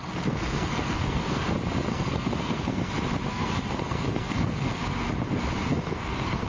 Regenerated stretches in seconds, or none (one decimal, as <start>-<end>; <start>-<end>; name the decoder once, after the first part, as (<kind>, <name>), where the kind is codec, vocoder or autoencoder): 0.0-1.5 (codec, SNAC); 1.9-2.9; 3.3-4.8; 5.7-6.5